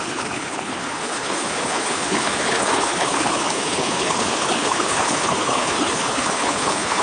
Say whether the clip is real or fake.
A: fake